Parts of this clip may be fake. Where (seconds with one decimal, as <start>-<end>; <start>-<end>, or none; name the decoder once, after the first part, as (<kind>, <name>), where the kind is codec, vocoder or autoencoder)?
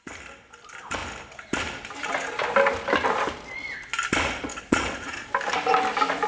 4.5-5.3 (vocoder, Vocos)